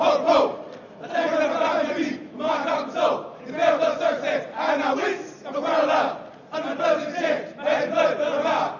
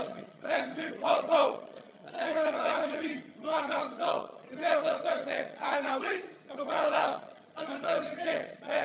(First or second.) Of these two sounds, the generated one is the second